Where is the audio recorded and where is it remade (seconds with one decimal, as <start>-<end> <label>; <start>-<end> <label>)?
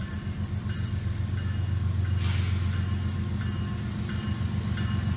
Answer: 0.0-1.4 remade; 1.4-5.2 recorded